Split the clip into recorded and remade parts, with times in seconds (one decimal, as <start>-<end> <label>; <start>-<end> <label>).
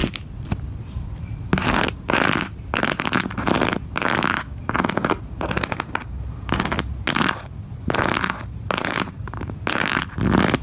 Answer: 0.0-5.0 recorded; 5.0-5.9 remade; 5.9-8.8 recorded; 8.8-10.2 remade; 10.2-10.6 recorded